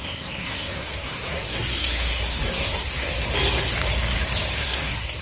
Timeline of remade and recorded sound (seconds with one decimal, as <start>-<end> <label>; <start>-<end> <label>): 0.0-3.1 remade; 3.1-4.6 recorded; 4.6-5.2 remade